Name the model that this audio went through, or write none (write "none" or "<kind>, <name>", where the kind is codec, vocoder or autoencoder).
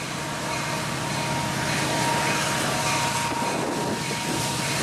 none